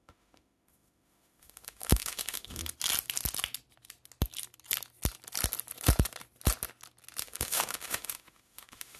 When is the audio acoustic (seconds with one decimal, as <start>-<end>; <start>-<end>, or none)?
2.6-7.2